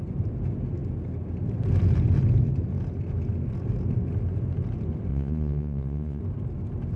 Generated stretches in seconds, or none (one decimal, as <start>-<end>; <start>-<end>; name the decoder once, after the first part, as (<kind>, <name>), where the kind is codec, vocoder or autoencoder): 5.1-6.2 (vocoder, Vocos)